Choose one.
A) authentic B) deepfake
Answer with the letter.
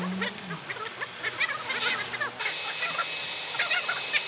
A